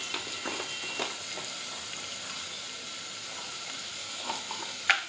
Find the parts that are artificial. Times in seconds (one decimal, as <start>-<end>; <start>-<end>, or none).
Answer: 4.0-5.1